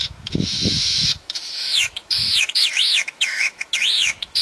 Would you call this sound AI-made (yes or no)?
yes